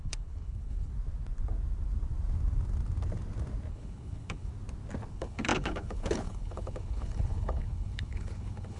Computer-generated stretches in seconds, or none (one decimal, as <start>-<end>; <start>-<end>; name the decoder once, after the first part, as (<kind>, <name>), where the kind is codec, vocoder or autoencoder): 0.0-0.9 (codec, HILCodec); 3.7-4.5; 5.1-8.8

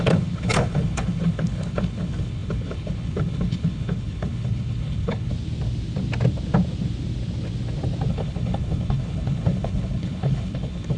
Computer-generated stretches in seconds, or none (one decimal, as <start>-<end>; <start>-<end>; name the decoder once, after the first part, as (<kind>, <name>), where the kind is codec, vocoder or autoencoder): 0.0-5.3 (codec, HILCodec); 8.1-11.0

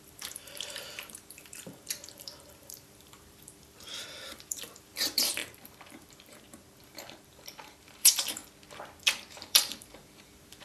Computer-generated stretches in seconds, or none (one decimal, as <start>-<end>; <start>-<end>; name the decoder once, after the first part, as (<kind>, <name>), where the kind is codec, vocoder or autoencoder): 0.0-8.4 (vocoder, BigVGAN v2); 9.3-10.6